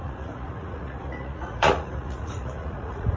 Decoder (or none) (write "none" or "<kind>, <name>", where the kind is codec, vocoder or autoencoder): vocoder, Vocos